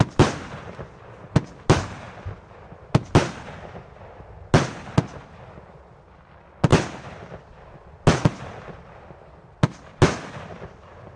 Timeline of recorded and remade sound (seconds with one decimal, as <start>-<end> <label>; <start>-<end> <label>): 0.0-11.2 recorded